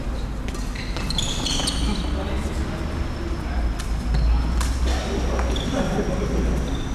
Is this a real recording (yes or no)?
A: yes